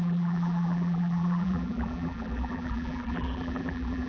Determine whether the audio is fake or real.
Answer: fake